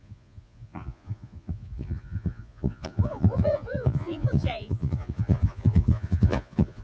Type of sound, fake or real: fake